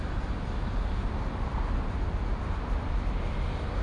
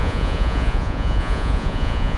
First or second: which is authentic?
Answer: first